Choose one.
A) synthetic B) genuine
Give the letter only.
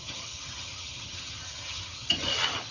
A